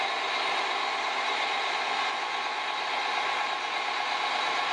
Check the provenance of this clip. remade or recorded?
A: recorded